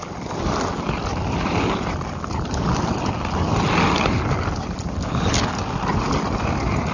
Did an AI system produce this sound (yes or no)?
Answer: no